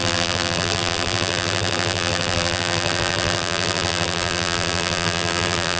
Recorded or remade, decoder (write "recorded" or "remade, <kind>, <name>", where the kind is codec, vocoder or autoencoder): remade, vocoder, BigVGAN v2